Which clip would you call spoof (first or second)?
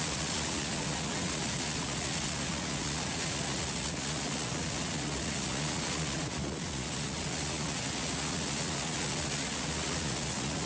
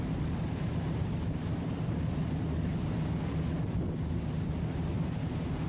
first